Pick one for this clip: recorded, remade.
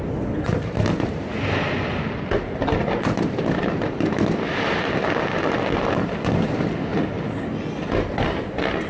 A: recorded